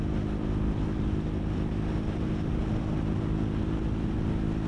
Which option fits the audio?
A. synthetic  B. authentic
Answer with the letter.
B